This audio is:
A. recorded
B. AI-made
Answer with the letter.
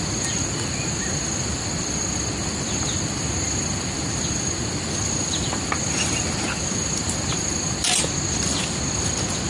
A